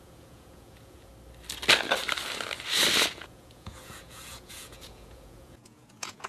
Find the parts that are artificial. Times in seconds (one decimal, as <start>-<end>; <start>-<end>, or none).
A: 0.0-1.1; 3.1-6.3